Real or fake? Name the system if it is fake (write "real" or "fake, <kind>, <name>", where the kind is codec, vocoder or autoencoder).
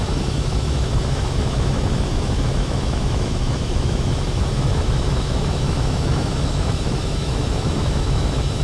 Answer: fake, autoencoder, DAC-VAE